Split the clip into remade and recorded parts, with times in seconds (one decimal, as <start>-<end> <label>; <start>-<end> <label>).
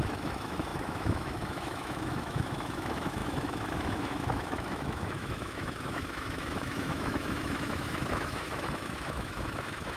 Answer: 0.0-10.0 remade